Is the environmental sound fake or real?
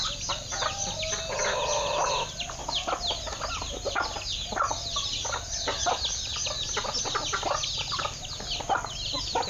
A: real